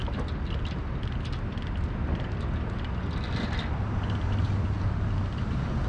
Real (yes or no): yes